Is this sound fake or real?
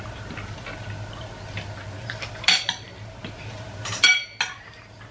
real